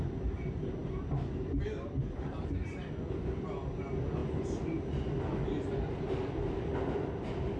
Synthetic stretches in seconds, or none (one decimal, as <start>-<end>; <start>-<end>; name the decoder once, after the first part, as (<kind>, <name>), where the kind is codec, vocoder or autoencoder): none